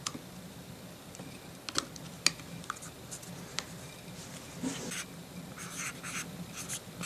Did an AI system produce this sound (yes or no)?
no